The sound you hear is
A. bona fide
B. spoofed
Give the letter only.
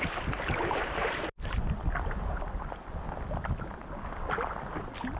A